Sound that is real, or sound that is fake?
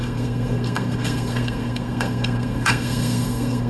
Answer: fake